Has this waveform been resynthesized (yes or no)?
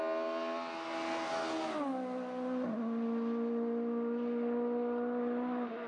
no